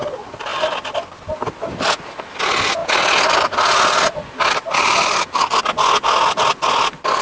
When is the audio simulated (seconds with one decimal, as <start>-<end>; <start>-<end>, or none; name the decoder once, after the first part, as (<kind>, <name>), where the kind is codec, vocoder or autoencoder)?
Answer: 0.5-1.1 (vocoder, BigVGAN v2)